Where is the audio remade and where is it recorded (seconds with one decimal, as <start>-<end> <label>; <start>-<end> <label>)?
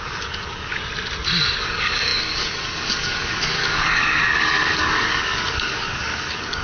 0.0-0.8 remade; 0.8-1.6 recorded; 1.6-6.6 remade